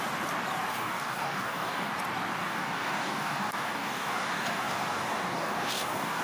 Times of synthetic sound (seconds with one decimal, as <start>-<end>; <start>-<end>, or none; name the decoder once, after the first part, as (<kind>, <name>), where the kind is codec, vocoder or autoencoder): 0.7-1.9 (codec, DAC); 2.4-6.2